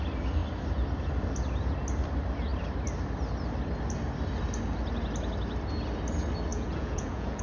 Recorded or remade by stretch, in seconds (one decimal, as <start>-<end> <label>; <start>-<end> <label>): 0.0-6.5 recorded; 6.5-7.4 remade